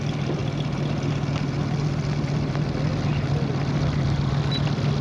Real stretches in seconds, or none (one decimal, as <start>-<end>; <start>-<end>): 0.0-5.0